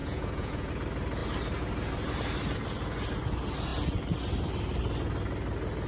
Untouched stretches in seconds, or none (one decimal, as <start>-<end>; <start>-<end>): 0.7-5.9